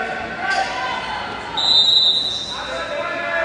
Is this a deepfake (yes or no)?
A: no